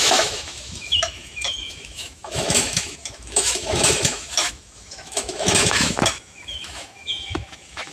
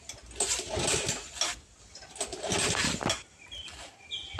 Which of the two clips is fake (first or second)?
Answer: first